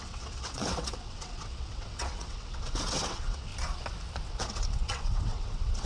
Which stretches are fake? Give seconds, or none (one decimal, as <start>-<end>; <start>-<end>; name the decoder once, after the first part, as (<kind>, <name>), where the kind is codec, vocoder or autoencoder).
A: 0.0-3.5 (vocoder, WaveNeXt); 4.3-5.9